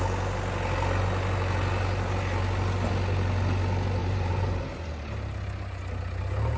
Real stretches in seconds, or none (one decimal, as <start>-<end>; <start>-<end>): 0.0-4.0; 4.6-6.6